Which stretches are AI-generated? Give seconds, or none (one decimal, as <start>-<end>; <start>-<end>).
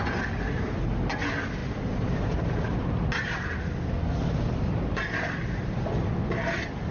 none